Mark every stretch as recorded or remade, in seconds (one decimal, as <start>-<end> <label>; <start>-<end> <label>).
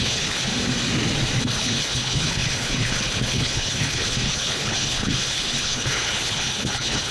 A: 0.0-0.5 remade; 0.5-1.4 recorded; 1.4-7.1 remade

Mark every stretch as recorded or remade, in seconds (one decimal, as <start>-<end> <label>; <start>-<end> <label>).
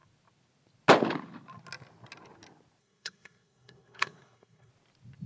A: 0.0-2.8 recorded; 2.8-4.7 remade; 4.7-5.3 recorded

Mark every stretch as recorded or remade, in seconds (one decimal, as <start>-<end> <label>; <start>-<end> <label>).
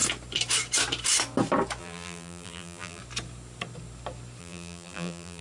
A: 0.0-1.8 recorded; 1.8-3.0 remade; 3.0-4.4 recorded; 4.4-5.4 remade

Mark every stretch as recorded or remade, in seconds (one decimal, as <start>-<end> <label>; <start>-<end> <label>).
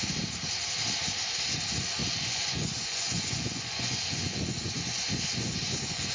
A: 0.0-2.0 recorded; 2.0-6.1 remade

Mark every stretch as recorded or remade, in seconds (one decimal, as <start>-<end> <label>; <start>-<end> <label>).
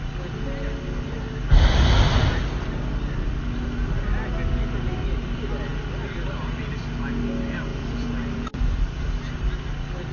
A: 0.0-5.7 recorded; 5.7-6.7 remade; 6.7-7.7 recorded; 7.7-9.0 remade; 9.0-10.1 recorded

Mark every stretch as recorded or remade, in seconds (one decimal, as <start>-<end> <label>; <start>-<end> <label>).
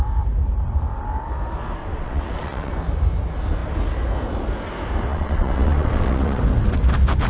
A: 0.0-1.8 recorded; 1.8-2.7 remade; 2.7-5.1 recorded; 5.1-6.4 remade; 6.4-7.3 recorded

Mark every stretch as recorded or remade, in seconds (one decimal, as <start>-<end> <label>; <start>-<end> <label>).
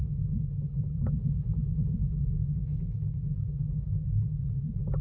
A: 0.0-2.3 remade; 2.3-2.7 recorded; 2.7-3.2 remade; 3.2-5.0 recorded